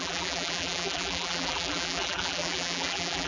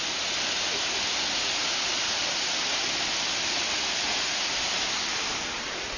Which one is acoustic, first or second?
second